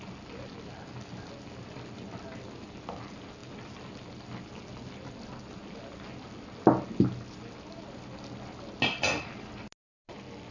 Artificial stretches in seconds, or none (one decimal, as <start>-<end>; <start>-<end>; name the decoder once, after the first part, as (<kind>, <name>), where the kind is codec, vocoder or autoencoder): none